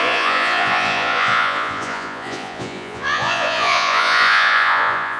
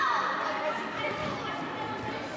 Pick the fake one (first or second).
first